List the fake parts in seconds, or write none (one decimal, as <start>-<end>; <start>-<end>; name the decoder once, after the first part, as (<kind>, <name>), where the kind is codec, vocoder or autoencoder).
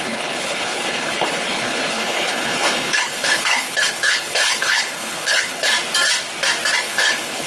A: 0.0-5.7 (codec, HILCodec); 6.8-7.5